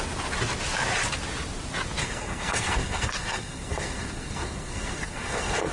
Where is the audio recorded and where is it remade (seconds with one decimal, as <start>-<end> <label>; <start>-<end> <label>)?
0.0-2.0 recorded; 2.0-5.7 remade